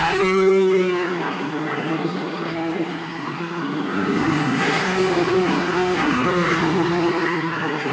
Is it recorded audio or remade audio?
remade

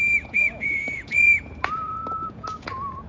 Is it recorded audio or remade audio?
remade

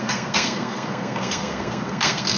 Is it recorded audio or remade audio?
remade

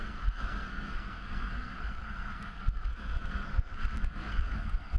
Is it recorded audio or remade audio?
remade